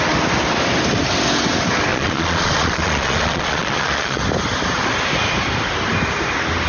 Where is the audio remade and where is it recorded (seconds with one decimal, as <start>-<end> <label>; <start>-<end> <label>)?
0.0-1.9 recorded; 1.9-4.2 remade; 4.2-6.7 recorded